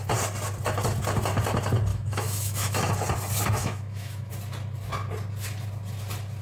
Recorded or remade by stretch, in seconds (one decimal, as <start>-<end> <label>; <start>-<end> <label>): 0.0-1.9 recorded; 1.9-2.9 remade; 2.9-3.6 recorded; 3.6-4.3 remade; 4.3-6.4 recorded